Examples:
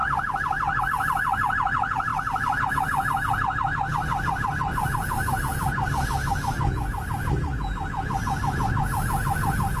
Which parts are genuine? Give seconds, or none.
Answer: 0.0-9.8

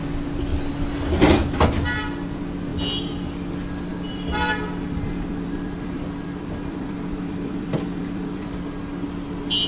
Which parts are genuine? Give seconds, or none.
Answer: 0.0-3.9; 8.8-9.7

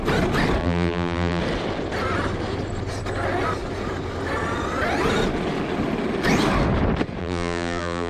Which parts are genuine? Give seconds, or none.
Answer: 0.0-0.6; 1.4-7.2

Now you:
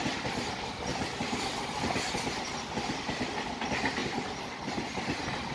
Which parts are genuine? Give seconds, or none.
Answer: 0.0-0.9; 2.1-5.5

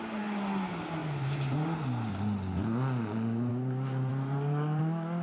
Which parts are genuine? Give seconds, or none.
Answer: 0.0-4.1; 4.8-5.2

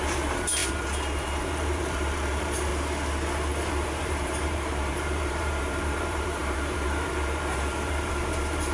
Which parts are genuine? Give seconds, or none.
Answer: 2.7-3.7

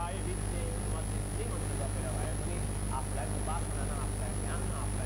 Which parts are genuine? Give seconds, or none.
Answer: 0.0-5.1

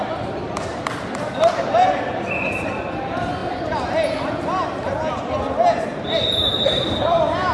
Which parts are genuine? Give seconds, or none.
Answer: 3.4-6.0